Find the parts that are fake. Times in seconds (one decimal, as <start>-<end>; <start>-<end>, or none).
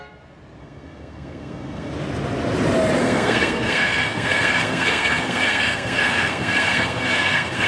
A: 0.6-1.9; 3.0-7.7